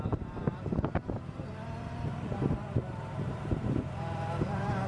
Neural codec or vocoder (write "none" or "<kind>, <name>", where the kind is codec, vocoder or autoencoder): vocoder, BigVGAN v2